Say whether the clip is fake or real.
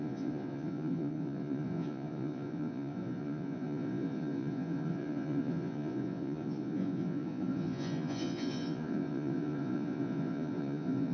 fake